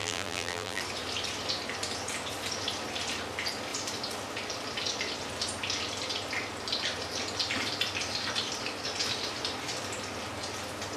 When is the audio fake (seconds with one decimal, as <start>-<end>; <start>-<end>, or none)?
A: 0.0-0.8